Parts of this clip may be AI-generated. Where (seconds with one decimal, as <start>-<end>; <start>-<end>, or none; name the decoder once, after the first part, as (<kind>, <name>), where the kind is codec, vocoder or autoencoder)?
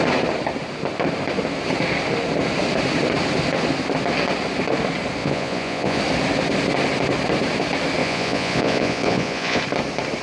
5.2-6.0 (vocoder, Vocos); 8.0-9.6